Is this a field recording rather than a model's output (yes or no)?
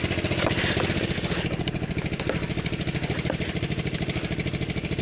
yes